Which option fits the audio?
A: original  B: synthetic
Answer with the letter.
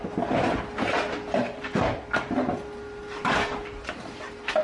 A